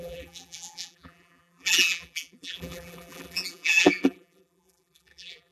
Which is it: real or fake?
fake